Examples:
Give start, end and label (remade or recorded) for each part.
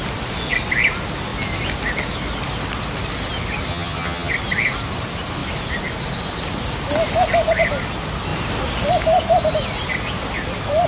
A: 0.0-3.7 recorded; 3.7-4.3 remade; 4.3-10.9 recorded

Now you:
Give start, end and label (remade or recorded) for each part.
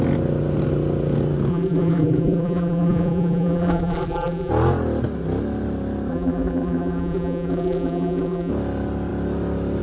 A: 0.0-1.5 recorded; 1.5-4.5 remade; 4.5-6.1 recorded; 6.1-8.5 remade; 8.5-9.8 recorded